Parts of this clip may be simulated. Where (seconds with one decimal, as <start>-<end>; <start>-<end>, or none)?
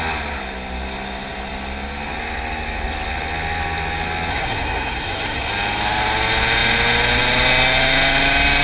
4.3-5.5